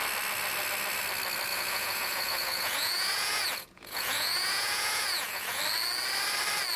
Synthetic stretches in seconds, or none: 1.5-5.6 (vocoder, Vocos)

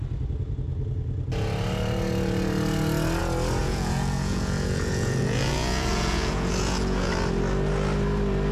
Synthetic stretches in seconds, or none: 3.6-7.1 (vocoder, Vocos)

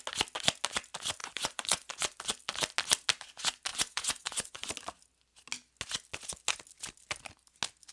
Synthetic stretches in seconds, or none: 1.2-2.2 (vocoder, Vocos); 3.7-4.7

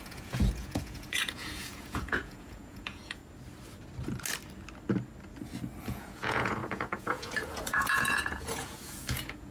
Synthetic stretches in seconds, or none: 0.0-3.2 (vocoder, Vocos); 5.8-9.5

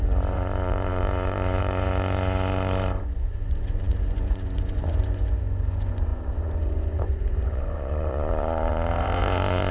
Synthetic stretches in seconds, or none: 0.0-9.7 (vocoder, Vocos)

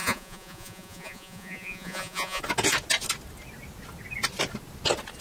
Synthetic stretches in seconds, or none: 0.0-2.4 (vocoder, Vocos)

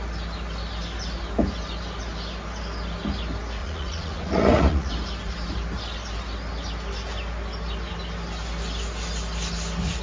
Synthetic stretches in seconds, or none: 3.6-4.9 (vocoder, Vocos)